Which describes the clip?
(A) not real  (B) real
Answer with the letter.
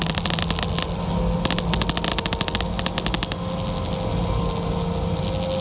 B